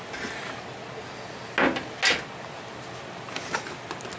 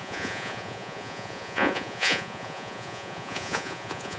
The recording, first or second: first